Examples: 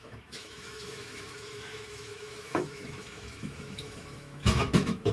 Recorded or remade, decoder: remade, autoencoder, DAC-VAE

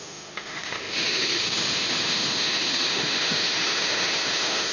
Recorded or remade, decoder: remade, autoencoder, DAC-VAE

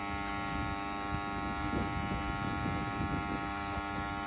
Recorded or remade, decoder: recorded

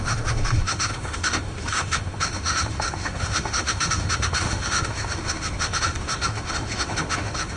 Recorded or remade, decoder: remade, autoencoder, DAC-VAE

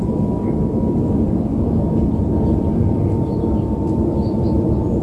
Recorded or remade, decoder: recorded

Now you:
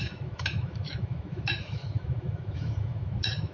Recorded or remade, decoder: remade, autoencoder, DAC-VAE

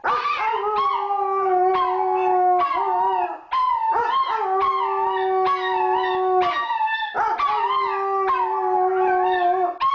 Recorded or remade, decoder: recorded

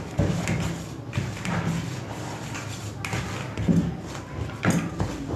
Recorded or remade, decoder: recorded